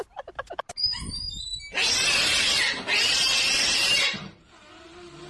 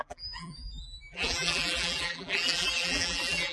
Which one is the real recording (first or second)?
first